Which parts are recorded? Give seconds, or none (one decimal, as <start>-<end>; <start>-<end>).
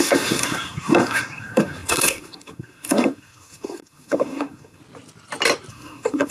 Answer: 4.8-5.7